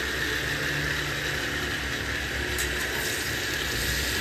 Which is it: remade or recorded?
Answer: recorded